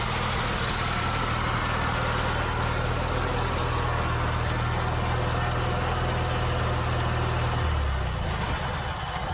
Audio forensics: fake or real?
real